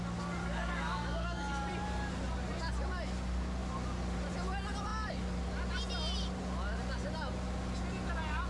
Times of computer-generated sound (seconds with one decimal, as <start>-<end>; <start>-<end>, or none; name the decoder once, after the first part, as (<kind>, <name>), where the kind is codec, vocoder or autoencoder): 0.4-1.7 (codec, DAC)